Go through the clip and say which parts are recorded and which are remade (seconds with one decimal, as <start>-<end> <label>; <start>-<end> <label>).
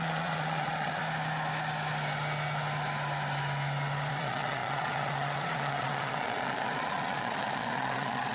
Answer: 0.0-1.0 remade; 1.0-4.1 recorded; 4.1-8.3 remade